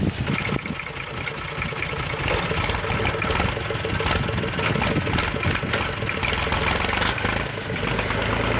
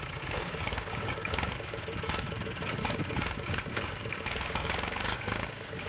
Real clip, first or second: first